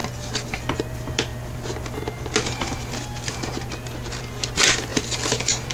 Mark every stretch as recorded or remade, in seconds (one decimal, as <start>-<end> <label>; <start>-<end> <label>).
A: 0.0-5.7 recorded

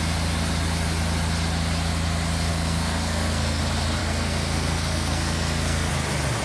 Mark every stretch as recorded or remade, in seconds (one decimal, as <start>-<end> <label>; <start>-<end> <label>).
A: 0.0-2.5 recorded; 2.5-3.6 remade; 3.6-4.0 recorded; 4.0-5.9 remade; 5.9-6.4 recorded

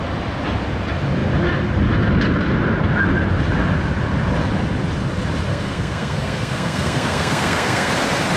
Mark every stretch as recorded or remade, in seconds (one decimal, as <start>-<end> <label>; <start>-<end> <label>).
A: 0.0-5.5 recorded; 5.5-7.9 remade; 7.9-8.4 recorded